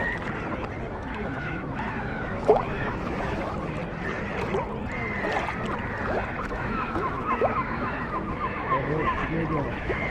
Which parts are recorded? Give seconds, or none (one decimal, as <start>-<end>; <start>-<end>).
0.0-0.9; 3.8-6.4; 9.2-9.7

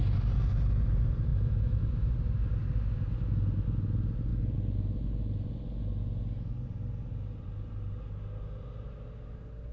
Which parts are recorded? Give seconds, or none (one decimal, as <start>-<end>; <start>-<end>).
0.0-1.3; 2.1-9.7

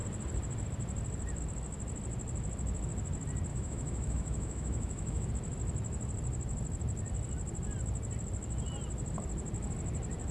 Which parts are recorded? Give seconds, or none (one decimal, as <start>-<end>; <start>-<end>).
0.0-3.5; 5.3-10.3

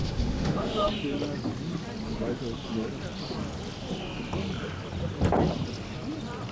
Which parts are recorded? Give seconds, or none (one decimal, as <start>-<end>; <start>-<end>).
0.9-6.5